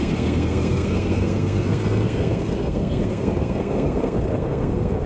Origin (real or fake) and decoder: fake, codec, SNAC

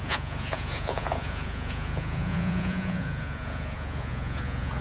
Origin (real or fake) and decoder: fake, vocoder, Vocos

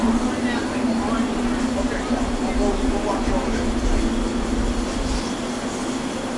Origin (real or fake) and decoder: real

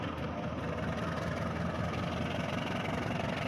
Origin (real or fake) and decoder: real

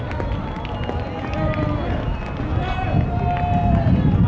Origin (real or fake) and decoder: real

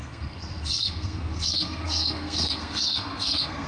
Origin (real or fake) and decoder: fake, codec, SNAC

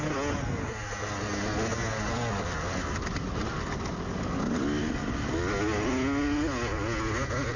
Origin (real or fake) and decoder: real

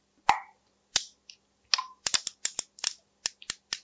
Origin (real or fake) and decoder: real